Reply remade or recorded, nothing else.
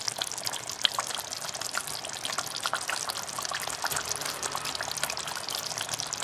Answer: recorded